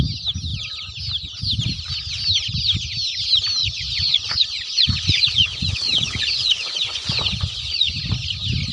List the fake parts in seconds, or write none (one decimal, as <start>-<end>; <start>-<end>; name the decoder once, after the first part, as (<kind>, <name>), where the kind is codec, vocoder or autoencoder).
3.6-7.9 (vocoder, Vocos)